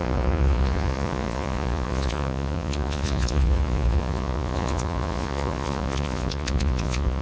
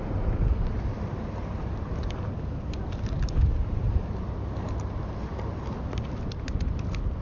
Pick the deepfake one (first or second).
first